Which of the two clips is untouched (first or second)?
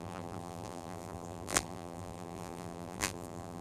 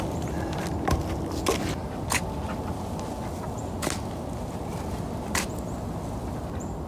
second